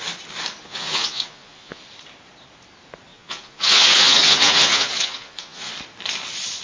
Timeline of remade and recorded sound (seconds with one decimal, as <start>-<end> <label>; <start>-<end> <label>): 0.0-0.6 recorded; 0.6-1.8 remade; 1.8-3.1 recorded; 3.1-5.7 remade; 5.7-6.6 recorded